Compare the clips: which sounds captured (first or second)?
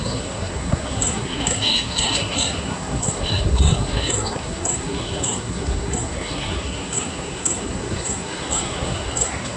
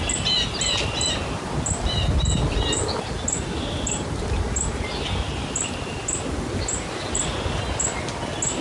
second